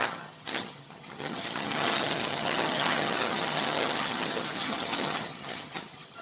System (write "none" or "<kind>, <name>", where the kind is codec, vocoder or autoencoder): vocoder, HiFi-GAN